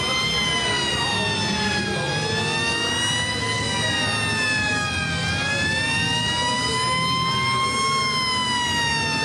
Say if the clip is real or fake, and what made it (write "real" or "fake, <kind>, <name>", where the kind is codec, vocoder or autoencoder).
real